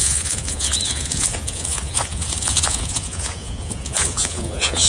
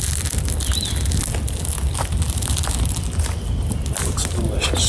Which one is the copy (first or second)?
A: first